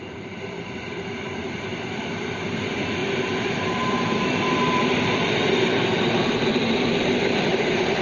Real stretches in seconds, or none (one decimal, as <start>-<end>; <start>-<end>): none